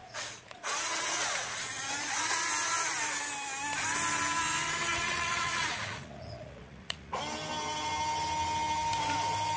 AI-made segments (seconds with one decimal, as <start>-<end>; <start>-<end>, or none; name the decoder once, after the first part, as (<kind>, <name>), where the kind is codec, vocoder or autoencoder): 0.0-2.4 (vocoder, Vocos); 4.9-7.2